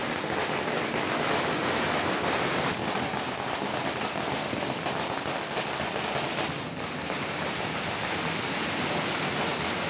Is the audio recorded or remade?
recorded